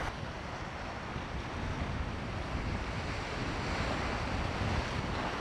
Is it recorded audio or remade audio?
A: recorded